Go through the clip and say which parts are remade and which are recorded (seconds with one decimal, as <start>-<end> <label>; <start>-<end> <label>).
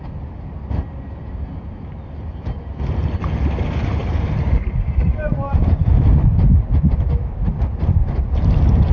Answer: 0.0-4.0 recorded; 4.0-5.8 remade; 5.8-8.9 recorded